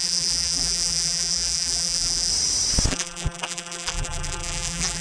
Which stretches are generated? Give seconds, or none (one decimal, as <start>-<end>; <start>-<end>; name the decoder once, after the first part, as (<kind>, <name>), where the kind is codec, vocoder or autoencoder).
0.0-2.3 (vocoder, BigVGAN v2); 2.9-5.0